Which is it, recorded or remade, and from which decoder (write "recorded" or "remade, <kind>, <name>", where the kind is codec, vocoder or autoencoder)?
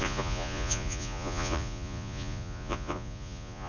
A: remade, vocoder, Vocos